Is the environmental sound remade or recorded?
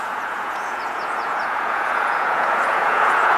remade